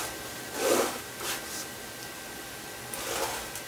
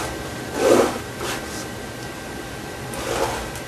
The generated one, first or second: second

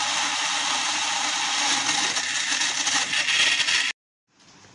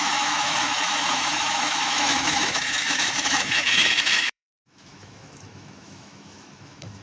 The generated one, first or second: second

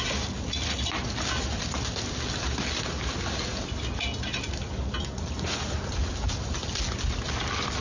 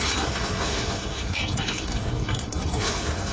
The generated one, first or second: second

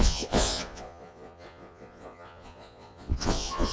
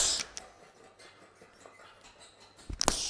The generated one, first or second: first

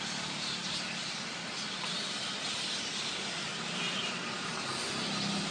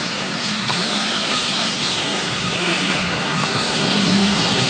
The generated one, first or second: second